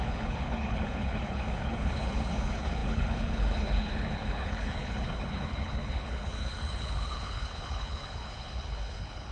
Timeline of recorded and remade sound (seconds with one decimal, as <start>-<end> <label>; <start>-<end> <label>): 0.0-9.3 remade